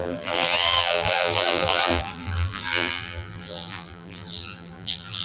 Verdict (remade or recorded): remade